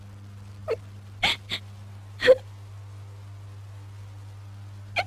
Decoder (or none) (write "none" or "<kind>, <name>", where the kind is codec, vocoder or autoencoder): none